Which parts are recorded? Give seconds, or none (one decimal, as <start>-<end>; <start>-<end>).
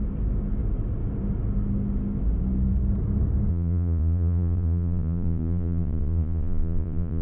0.0-3.5